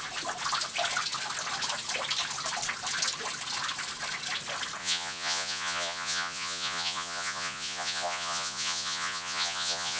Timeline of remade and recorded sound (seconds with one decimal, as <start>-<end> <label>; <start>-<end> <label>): 0.0-4.8 recorded; 4.8-10.0 remade